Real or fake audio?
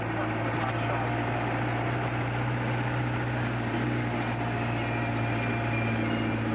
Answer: real